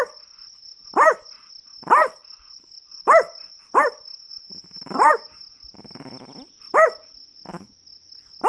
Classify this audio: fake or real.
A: real